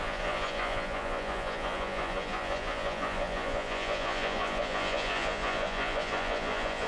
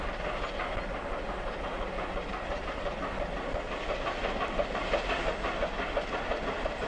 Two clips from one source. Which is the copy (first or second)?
first